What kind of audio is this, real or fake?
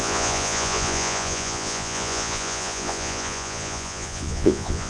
fake